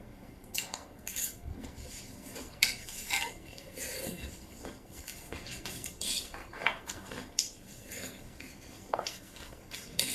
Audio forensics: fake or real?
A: fake